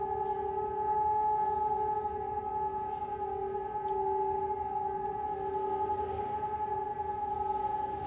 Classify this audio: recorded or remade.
recorded